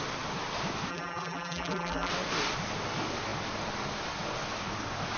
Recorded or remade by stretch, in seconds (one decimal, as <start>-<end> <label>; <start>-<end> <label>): 0.0-0.9 recorded; 0.9-2.1 remade; 2.1-5.2 recorded